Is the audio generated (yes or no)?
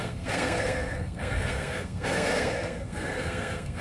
yes